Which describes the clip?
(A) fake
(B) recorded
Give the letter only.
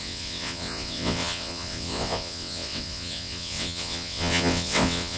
A